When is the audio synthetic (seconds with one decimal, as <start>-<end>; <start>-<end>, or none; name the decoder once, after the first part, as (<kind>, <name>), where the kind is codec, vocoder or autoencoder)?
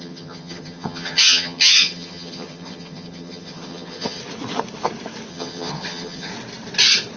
0.0-4.2 (vocoder, HiFi-GAN); 5.3-6.3